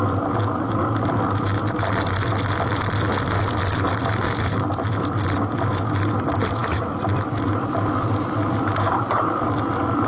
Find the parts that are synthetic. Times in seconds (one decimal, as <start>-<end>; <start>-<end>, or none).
6.6-10.1